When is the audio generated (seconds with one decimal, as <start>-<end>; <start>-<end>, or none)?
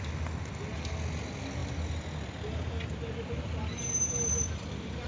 none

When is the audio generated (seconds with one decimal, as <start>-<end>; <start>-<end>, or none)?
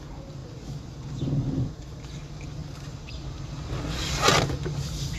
none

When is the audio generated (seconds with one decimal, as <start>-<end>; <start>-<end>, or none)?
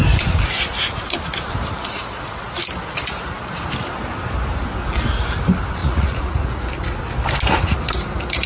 5.8-6.5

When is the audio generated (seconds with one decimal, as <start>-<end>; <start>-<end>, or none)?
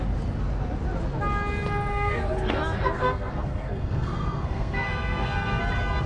1.9-5.6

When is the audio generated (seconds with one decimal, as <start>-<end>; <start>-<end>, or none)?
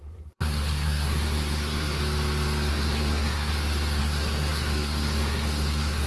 0.0-2.0; 2.7-3.5; 4.0-6.1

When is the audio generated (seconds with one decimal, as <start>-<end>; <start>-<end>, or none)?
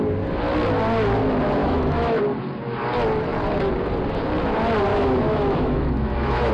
1.6-2.2; 4.9-6.5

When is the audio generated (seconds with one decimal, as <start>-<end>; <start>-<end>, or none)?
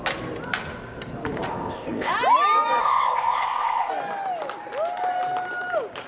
1.5-2.1; 2.8-3.9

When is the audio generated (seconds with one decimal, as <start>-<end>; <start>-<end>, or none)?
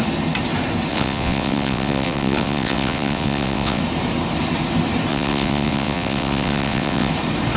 0.9-3.8; 5.1-7.1